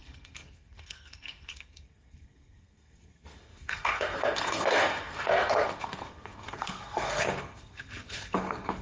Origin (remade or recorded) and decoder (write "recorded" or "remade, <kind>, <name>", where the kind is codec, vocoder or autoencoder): remade, codec, SNAC